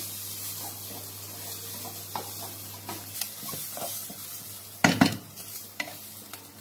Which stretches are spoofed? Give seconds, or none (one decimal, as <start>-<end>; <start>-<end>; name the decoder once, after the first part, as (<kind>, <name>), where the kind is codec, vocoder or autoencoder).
none